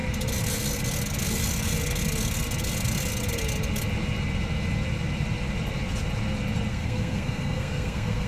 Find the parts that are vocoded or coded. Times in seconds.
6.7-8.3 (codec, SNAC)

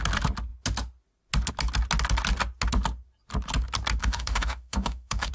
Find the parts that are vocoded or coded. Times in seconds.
4.0-5.3 (autoencoder, DAC-VAE)

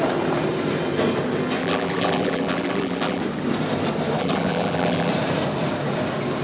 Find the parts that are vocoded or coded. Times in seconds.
1.6-3.2 (vocoder, BigVGAN v2); 4.2-5.1

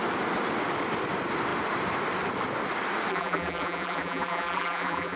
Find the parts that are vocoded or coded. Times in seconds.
3.1-5.2 (vocoder, BigVGAN v2)

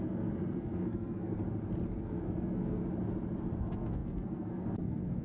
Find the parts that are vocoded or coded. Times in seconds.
0.0-1.4 (codec, SNAC); 2.0-2.8; 3.6-5.2

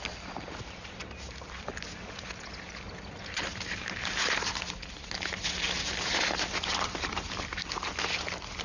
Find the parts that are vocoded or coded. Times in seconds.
none

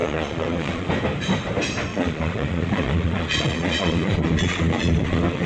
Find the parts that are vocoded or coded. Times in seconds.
0.0-0.9 (vocoder, Vocos); 1.9-5.5